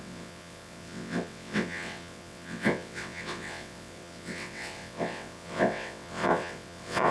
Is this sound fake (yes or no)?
yes